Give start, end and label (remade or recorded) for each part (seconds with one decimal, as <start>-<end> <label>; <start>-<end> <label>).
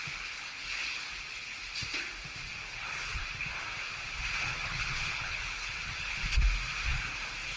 0.0-1.8 remade; 1.8-2.6 recorded; 2.6-3.2 remade; 3.2-4.4 recorded; 4.4-6.2 remade; 6.2-7.6 recorded